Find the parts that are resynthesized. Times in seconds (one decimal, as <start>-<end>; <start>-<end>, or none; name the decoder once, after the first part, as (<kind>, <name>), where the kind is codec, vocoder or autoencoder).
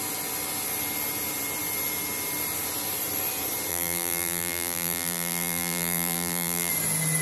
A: 3.7-6.7 (vocoder, BigVGAN v2)